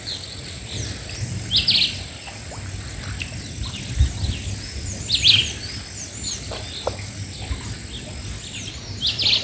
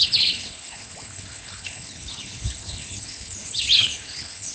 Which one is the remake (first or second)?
second